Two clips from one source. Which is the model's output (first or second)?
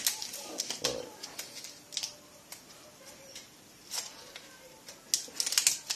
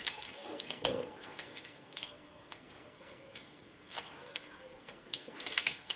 second